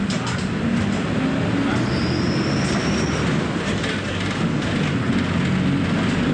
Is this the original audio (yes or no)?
yes